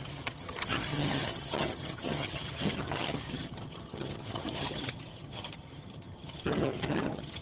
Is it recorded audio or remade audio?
remade